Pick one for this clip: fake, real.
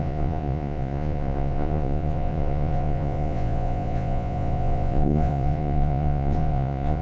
fake